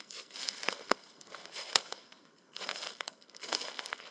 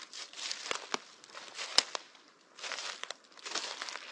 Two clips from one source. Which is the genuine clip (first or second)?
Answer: second